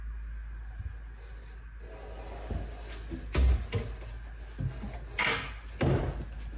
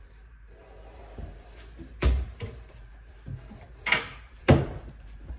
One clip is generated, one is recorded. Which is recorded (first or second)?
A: first